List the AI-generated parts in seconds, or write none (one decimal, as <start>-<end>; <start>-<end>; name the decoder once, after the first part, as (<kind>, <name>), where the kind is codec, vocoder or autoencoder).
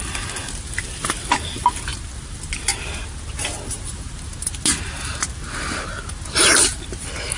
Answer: none